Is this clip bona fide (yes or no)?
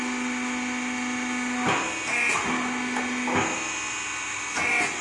yes